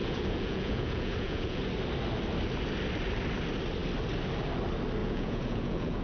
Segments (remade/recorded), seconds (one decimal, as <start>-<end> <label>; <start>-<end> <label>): 0.0-1.6 remade; 1.6-5.0 recorded; 5.0-6.0 remade